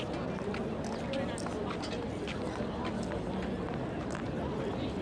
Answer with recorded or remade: recorded